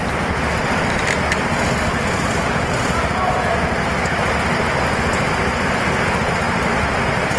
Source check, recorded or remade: recorded